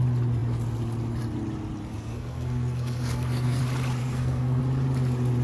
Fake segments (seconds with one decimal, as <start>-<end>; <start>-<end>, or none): 1.9-3.6; 4.0-4.6